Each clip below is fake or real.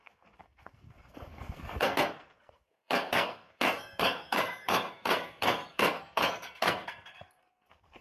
fake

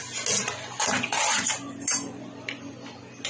real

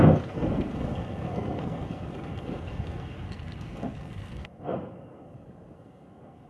fake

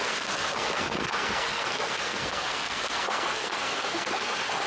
fake